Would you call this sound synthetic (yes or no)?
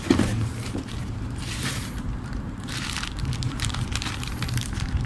yes